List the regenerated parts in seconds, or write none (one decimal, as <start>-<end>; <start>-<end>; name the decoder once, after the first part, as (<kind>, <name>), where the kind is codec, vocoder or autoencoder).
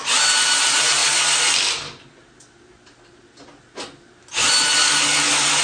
4.8-5.6 (codec, DAC)